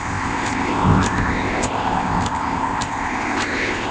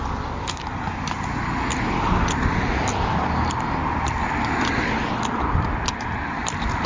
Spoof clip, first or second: first